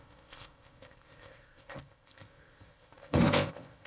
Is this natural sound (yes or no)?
no